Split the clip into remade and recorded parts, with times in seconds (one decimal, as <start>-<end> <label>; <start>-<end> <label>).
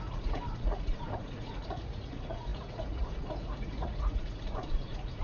0.0-5.2 remade